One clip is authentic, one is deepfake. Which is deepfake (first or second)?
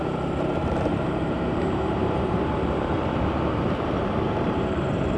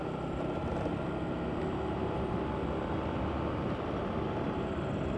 first